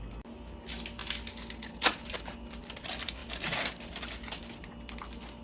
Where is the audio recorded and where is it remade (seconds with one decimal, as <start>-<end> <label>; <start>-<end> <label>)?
0.0-5.4 recorded